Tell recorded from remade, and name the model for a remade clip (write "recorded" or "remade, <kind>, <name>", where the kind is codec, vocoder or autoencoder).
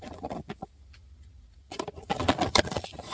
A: remade, vocoder, Vocos